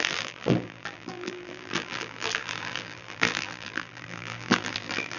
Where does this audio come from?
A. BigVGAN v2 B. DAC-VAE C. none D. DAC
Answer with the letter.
A